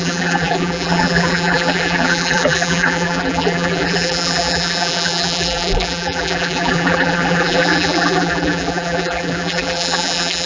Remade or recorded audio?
remade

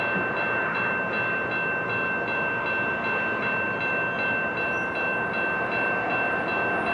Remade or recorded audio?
recorded